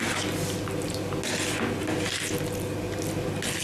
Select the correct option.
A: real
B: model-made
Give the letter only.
A